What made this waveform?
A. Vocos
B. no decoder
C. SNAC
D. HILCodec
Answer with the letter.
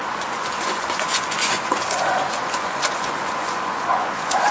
A